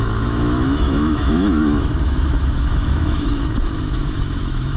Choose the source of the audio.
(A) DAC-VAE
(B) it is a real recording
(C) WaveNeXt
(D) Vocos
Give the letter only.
A